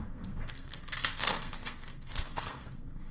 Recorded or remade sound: remade